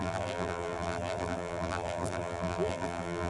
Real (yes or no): no